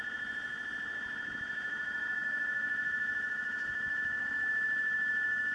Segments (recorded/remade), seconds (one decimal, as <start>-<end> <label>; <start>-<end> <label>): 0.0-5.5 recorded